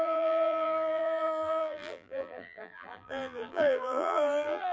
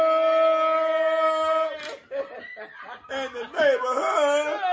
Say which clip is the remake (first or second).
first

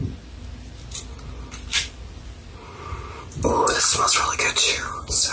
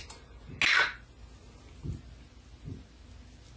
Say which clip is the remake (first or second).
first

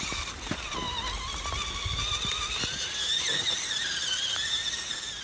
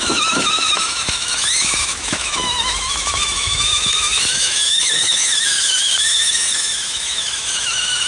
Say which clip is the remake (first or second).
second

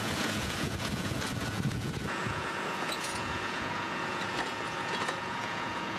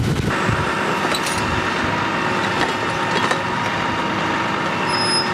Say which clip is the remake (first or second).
first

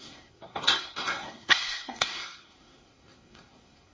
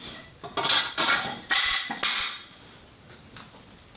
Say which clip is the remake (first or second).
first